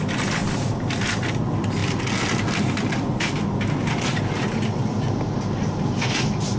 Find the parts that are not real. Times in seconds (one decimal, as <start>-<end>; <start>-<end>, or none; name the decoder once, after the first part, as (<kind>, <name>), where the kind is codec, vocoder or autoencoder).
none